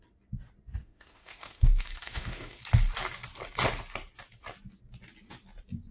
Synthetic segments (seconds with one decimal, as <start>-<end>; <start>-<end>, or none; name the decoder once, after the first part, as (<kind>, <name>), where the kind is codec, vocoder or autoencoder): 0.8-2.6 (autoencoder, DAC-VAE)